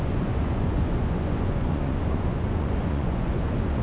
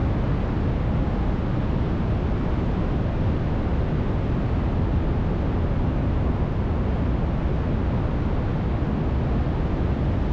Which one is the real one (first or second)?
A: second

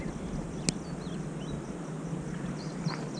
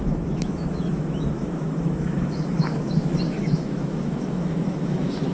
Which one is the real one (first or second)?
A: first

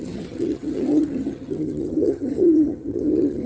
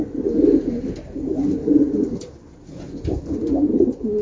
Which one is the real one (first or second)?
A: second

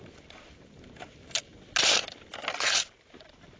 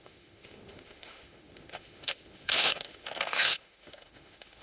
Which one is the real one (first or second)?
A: first